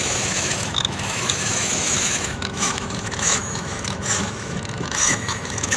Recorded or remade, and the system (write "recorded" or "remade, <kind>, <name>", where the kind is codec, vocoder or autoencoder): remade, autoencoder, DAC-VAE